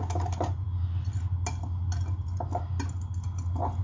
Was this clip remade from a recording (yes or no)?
no